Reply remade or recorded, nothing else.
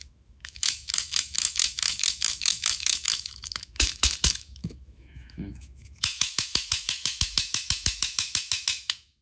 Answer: remade